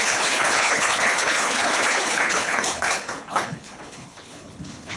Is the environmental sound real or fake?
fake